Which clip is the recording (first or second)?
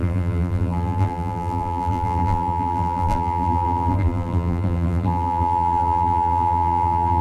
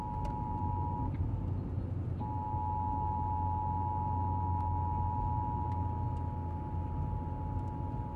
second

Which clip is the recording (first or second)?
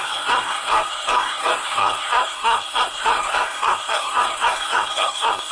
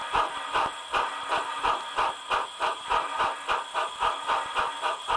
second